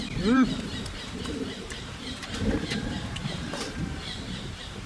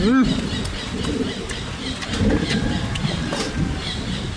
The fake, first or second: first